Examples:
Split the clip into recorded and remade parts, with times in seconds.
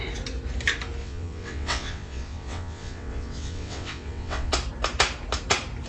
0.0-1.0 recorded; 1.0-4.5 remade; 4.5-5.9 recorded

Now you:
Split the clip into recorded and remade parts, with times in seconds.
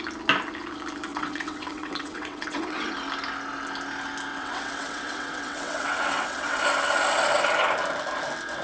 0.0-1.1 recorded; 1.1-2.9 remade; 2.9-4.3 recorded; 4.3-6.6 remade; 6.6-8.6 recorded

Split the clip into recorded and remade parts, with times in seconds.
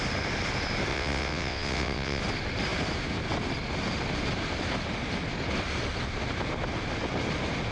0.0-0.9 recorded; 0.9-2.2 remade; 2.2-7.7 recorded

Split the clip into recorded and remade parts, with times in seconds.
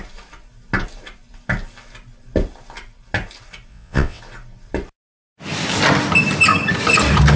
0.0-3.7 recorded; 3.7-4.2 remade; 4.2-7.4 recorded